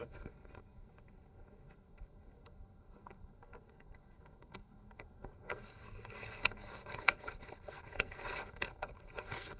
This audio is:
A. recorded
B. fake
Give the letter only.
B